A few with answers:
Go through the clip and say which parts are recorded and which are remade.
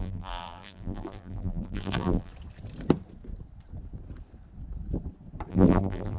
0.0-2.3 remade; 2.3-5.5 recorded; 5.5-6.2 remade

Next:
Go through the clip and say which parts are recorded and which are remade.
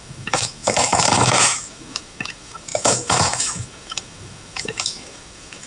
0.0-5.7 remade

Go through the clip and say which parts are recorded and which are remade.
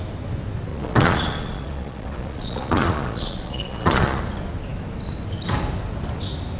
0.0-0.7 recorded; 0.7-4.2 remade; 4.2-6.6 recorded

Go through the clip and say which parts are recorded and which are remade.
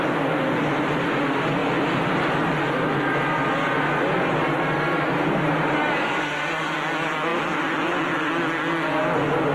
0.0-9.5 recorded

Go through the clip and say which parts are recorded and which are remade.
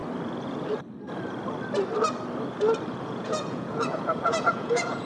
0.0-3.0 recorded; 3.0-5.0 remade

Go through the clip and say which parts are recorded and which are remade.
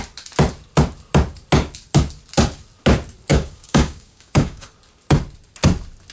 0.0-3.3 recorded; 3.3-4.7 remade; 4.7-6.1 recorded